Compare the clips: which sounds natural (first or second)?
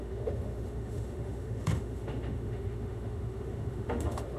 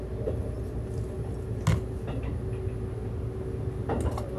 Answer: second